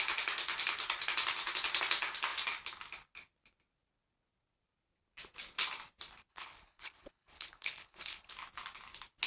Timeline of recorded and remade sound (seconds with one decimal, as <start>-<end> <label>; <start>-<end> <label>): 0.0-6.3 recorded; 6.3-8.3 remade; 8.3-9.3 recorded